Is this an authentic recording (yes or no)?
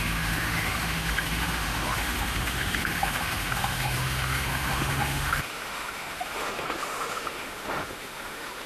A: no